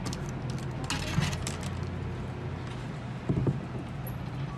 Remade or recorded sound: recorded